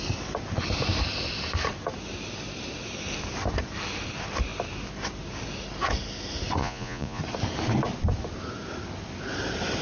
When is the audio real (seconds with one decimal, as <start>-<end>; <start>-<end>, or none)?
0.0-6.6; 7.2-9.8